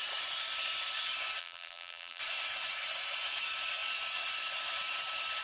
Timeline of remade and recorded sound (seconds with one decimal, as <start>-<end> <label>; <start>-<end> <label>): 0.0-1.4 recorded; 1.4-2.2 remade; 2.2-5.4 recorded